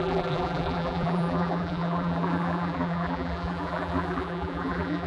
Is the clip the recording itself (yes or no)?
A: no